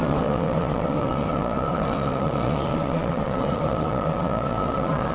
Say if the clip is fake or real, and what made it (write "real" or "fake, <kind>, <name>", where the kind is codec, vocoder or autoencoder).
fake, vocoder, Vocos